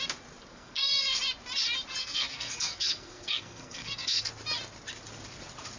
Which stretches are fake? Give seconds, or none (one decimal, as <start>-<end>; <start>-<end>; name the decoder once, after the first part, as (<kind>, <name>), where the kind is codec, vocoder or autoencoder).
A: 0.5-1.2 (codec, SNAC); 2.0-4.3